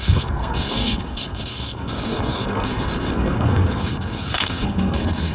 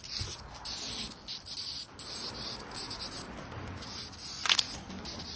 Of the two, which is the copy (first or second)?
first